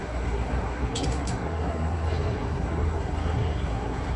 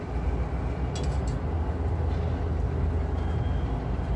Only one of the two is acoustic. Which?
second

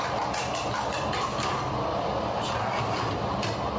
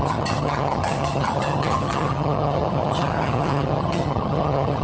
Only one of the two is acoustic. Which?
first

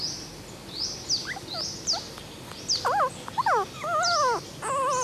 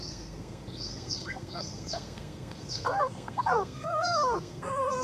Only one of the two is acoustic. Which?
first